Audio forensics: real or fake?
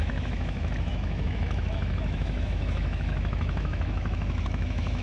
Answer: fake